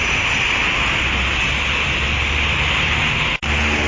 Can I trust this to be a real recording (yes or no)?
yes